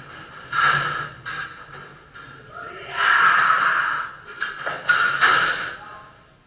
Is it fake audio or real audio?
real